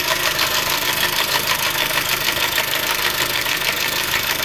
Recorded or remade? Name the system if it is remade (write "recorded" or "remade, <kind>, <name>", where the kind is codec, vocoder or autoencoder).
remade, codec, SNAC